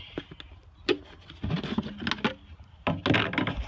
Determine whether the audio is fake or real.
real